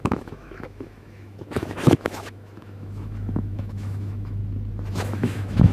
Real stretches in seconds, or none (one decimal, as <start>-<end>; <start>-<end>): 4.4-4.9